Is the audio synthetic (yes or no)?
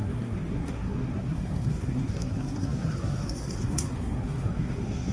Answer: yes